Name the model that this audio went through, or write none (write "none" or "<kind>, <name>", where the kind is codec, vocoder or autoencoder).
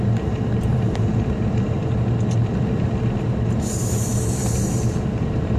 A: vocoder, BigVGAN v2